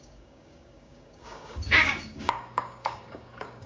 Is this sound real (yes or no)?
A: no